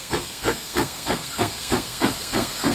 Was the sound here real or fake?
fake